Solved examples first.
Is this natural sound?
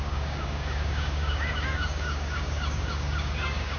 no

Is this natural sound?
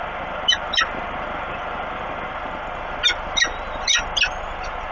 yes